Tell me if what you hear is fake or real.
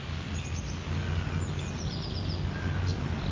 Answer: real